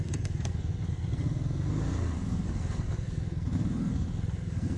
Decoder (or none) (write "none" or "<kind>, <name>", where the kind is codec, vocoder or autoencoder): codec, SNAC